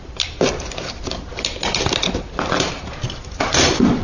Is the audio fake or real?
real